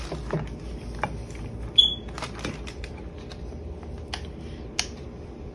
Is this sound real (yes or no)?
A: yes